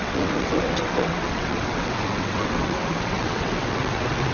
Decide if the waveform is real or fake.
fake